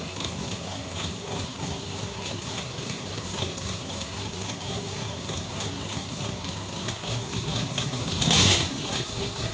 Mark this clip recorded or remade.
remade